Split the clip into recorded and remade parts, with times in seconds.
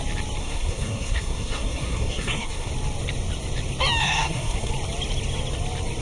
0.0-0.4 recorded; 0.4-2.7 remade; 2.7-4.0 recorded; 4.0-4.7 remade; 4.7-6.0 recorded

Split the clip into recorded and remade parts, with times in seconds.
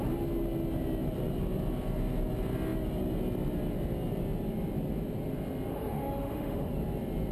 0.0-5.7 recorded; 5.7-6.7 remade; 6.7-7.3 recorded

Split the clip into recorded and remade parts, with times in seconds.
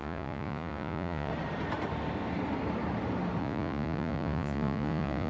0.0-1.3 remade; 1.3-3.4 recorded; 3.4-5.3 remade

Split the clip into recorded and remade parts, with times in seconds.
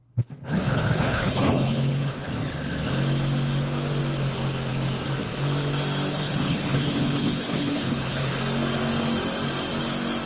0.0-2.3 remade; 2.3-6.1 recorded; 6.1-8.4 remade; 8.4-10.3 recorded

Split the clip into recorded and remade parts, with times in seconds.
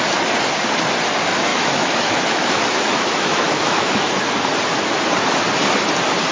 0.0-1.5 recorded; 1.5-4.1 remade; 4.1-6.3 recorded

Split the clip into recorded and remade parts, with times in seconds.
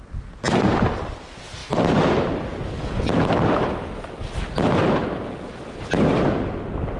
0.0-7.0 recorded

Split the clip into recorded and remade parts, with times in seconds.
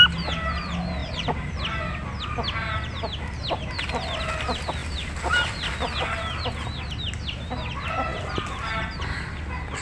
0.0-1.0 recorded; 1.0-1.6 remade; 1.6-4.8 recorded; 4.8-5.7 remade; 5.7-8.1 recorded; 8.1-8.8 remade; 8.8-9.8 recorded